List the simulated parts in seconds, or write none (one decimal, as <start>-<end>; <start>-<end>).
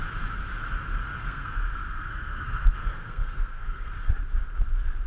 1.2-4.1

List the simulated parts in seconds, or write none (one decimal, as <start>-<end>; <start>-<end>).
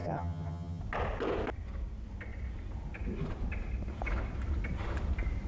0.0-0.8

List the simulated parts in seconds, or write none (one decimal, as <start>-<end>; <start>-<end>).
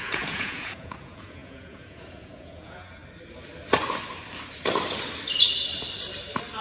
0.0-3.0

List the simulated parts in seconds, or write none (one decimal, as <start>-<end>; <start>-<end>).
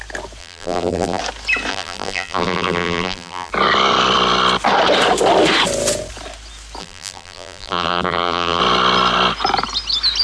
0.4-1.2; 1.7-3.5; 6.8-8.6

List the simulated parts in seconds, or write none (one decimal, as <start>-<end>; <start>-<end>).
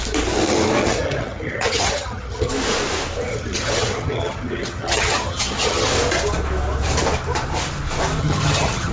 0.8-2.5; 3.3-5.9; 8.2-8.9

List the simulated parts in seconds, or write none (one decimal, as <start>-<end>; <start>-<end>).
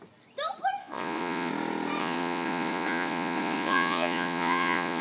0.8-1.5; 2.0-5.0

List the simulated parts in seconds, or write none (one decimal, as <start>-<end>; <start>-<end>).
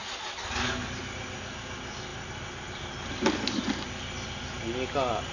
none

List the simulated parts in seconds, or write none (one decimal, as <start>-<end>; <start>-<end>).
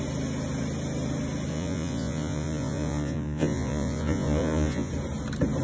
1.5-4.9